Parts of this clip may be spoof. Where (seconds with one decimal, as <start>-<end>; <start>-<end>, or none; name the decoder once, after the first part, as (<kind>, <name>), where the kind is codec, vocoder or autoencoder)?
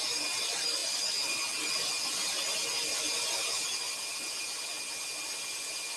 none